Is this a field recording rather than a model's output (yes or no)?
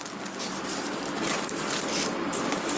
yes